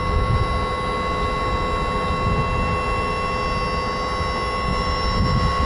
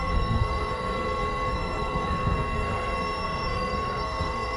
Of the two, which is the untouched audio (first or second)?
first